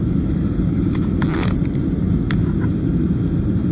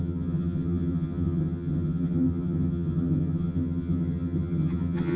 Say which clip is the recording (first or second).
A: first